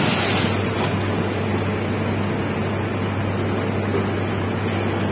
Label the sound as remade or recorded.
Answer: recorded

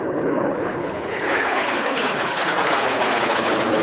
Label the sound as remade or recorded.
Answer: remade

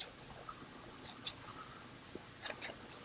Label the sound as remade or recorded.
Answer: recorded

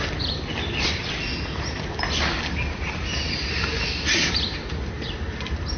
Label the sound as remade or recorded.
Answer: recorded